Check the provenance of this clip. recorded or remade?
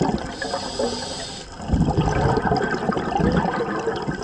recorded